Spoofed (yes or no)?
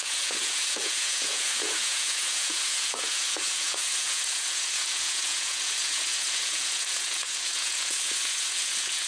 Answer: yes